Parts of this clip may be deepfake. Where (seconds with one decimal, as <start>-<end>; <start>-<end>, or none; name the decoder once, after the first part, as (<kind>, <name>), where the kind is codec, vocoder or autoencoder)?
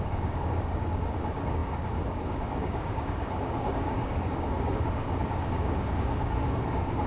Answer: 0.0-7.1 (codec, DAC)